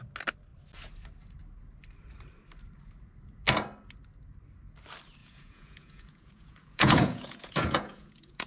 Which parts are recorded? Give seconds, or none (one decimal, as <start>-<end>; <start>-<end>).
0.0-5.2